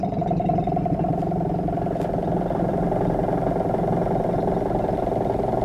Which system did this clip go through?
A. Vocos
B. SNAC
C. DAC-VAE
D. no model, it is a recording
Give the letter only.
D